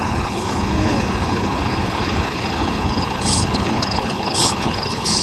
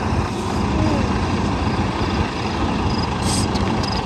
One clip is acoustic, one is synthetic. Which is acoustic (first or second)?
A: second